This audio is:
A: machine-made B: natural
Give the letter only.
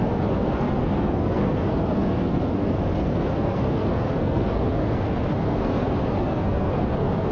A